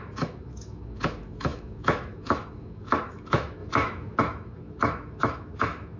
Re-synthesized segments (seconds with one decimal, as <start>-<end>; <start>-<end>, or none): 0.0-6.0